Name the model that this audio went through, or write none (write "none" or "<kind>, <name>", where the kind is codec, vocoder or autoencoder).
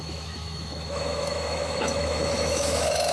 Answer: autoencoder, DAC-VAE